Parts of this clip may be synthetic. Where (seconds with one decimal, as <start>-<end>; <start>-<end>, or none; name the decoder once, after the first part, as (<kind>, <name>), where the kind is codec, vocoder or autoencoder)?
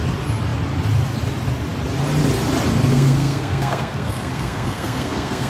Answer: 2.9-5.5 (codec, SNAC)